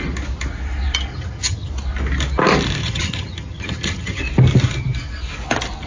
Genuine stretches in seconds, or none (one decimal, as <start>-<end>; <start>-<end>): 0.0-1.1; 1.7-2.8; 4.2-5.9